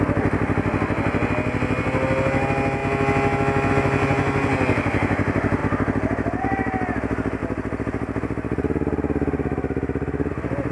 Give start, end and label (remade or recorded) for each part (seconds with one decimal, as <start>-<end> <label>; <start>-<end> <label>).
0.0-10.7 recorded

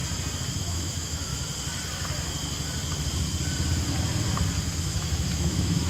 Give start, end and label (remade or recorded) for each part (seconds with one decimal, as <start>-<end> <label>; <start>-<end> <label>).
0.0-0.6 recorded; 0.6-1.3 remade; 1.3-4.8 recorded; 4.8-5.9 remade

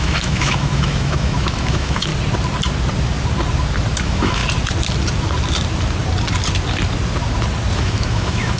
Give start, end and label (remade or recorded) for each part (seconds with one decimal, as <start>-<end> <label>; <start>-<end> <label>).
0.0-2.1 remade; 2.1-4.0 recorded; 4.0-4.4 remade; 4.4-7.8 recorded; 7.8-8.6 remade

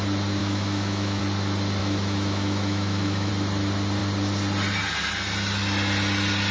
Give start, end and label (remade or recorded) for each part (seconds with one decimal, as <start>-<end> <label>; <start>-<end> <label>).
0.0-0.4 recorded; 0.4-1.2 remade; 1.2-1.8 recorded; 1.8-3.3 remade; 3.3-6.5 recorded

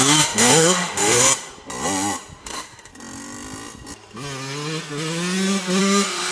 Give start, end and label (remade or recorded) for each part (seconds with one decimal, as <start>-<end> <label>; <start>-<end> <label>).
0.0-1.3 remade; 1.3-2.4 recorded; 2.4-2.9 remade; 2.9-5.8 recorded; 5.8-6.3 remade

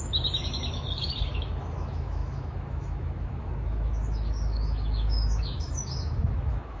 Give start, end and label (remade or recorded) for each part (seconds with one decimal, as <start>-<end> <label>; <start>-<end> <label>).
0.0-6.8 remade

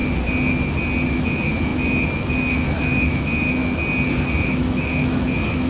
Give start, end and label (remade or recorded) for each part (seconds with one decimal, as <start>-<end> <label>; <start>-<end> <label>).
0.0-1.1 recorded; 1.1-3.6 remade; 3.6-4.2 recorded; 4.2-5.7 remade

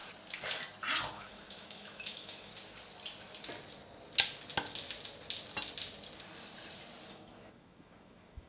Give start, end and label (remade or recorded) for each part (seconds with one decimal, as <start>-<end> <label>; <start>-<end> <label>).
0.0-1.1 recorded; 1.1-2.5 remade; 2.5-7.1 recorded; 7.1-8.5 remade